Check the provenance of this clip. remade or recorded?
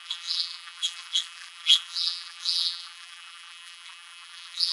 remade